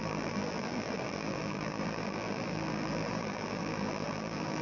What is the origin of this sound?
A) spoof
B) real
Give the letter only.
A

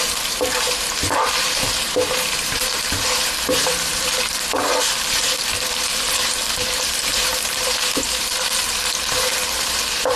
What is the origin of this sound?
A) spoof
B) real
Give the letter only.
A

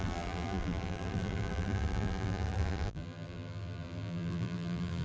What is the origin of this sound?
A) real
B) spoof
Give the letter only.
B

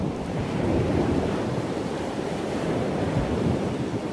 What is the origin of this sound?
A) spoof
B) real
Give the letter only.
A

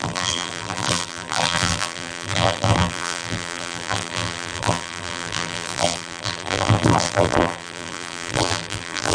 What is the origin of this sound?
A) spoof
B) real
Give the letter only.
A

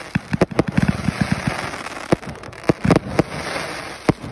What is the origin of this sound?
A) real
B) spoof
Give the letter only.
A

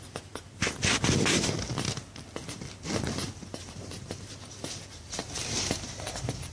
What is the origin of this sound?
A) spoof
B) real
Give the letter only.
A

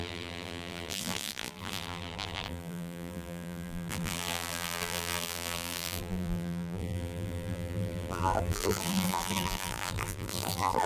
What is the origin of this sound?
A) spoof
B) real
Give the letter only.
A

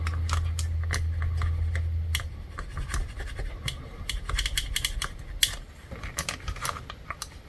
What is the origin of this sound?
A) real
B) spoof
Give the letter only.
A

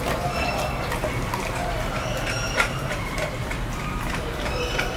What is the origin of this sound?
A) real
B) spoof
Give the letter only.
B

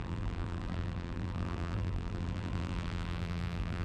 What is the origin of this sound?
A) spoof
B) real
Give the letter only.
A